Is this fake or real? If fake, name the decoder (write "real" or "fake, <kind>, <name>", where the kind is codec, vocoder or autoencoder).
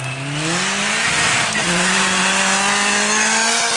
real